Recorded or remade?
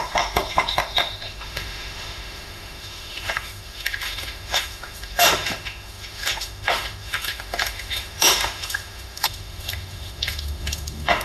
remade